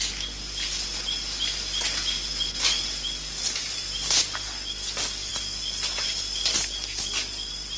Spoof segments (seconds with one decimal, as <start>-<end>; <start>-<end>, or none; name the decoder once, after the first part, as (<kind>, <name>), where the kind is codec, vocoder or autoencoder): none

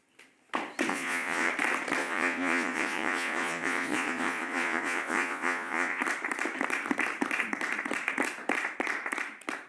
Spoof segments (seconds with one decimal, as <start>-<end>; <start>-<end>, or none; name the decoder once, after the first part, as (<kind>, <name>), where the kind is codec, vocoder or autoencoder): 0.9-1.5 (vocoder, Vocos); 2.0-6.0

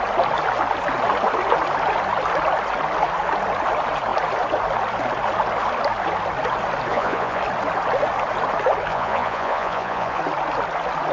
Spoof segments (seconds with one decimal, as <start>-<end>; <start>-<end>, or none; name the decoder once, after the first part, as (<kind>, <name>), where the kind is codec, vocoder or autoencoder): 6.9-7.4 (vocoder, Vocos); 8.9-10.2

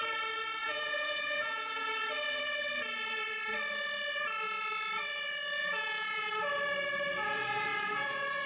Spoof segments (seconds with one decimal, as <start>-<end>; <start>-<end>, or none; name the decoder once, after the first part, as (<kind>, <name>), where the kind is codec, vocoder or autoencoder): 0.6-1.9 (vocoder, Vocos); 5.6-6.3

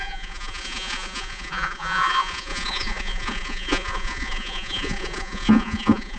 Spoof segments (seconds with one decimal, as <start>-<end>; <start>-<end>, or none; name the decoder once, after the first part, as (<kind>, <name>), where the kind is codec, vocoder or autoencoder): 0.0-6.2 (vocoder, Vocos)

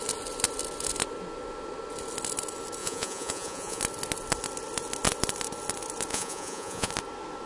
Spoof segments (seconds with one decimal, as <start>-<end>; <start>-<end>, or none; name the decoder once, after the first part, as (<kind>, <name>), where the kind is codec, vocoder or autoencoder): 2.8-3.8 (vocoder, Vocos); 6.1-6.9